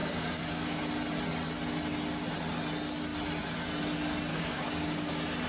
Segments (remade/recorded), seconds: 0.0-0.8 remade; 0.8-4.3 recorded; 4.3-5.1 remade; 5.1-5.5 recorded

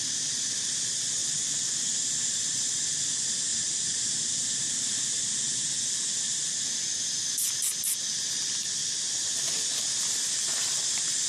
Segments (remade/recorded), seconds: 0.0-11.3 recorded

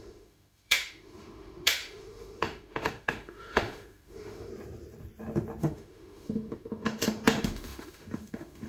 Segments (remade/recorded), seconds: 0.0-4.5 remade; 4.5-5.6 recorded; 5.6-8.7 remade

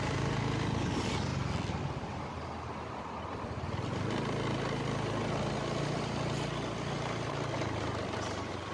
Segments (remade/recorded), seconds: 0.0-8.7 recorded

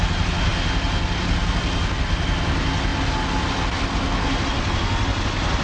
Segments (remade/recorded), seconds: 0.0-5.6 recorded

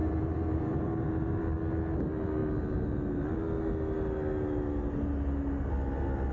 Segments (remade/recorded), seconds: 0.0-1.4 remade; 1.4-6.3 recorded